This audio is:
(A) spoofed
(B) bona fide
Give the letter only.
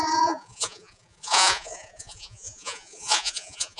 A